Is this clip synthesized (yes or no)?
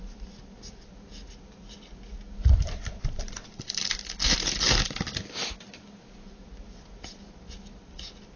no